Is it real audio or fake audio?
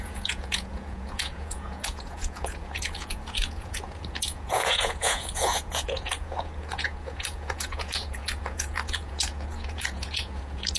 fake